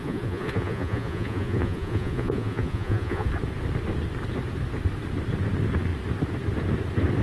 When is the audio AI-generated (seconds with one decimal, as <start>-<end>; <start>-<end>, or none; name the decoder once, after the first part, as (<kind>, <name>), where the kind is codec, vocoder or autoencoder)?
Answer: 0.0-3.3 (vocoder, Vocos)